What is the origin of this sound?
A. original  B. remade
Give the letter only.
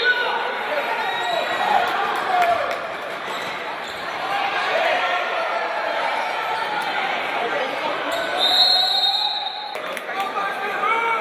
B